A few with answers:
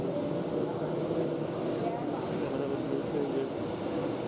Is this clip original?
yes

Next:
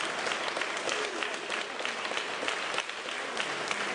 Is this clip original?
yes